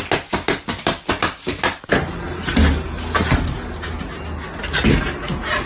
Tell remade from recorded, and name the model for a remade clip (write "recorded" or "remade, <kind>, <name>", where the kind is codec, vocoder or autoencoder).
recorded